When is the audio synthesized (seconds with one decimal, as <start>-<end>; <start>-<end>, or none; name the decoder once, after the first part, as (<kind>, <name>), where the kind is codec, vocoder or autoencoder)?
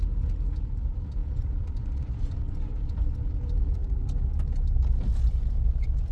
none